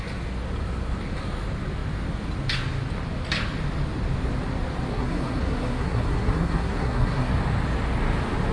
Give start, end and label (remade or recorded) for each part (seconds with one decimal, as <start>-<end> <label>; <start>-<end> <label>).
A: 0.0-4.9 recorded; 4.9-7.3 remade; 7.3-8.5 recorded